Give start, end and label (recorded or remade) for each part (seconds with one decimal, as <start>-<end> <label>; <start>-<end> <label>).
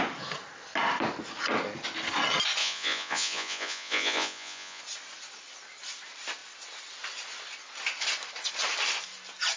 0.0-2.6 recorded; 2.6-4.8 remade; 4.8-9.6 recorded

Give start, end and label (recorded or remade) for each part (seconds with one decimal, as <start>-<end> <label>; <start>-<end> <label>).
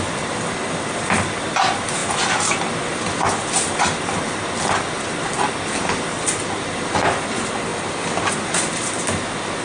0.0-9.6 recorded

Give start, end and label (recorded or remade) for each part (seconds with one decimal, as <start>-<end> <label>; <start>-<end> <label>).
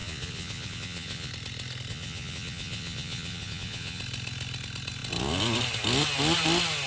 0.0-1.3 remade; 1.3-1.9 recorded; 1.9-4.0 remade; 4.0-6.9 recorded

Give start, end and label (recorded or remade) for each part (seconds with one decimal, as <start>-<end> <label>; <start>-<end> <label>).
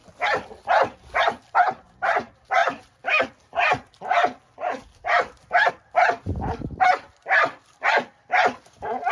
0.0-2.6 recorded; 2.6-5.7 remade; 5.7-7.7 recorded; 7.7-9.1 remade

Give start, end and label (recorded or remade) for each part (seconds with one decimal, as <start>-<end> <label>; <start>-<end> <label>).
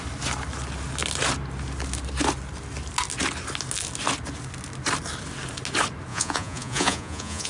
0.0-6.1 recorded; 6.1-7.5 remade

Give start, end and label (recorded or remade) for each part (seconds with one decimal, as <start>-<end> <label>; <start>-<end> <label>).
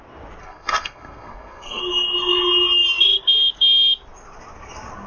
0.0-0.4 recorded; 0.4-1.8 remade; 1.8-5.1 recorded